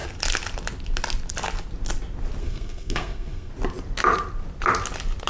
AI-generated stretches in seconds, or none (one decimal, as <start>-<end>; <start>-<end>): 2.4-3.5